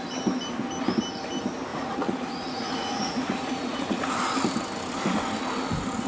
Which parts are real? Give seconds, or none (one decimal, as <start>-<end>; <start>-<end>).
0.0-1.7; 4.1-6.1